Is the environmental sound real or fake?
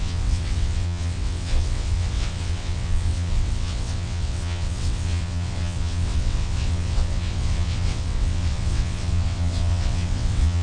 fake